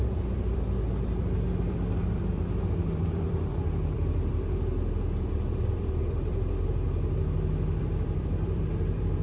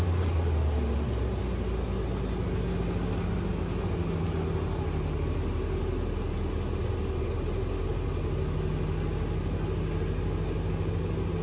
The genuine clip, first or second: second